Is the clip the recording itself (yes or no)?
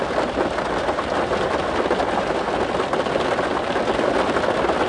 yes